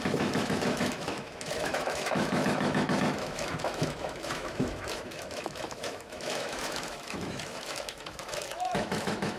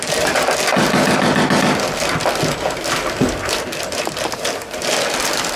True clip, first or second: second